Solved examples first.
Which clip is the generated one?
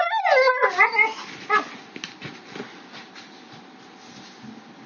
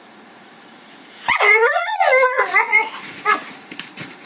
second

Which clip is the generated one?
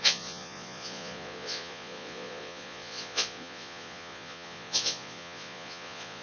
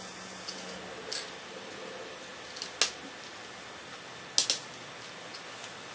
first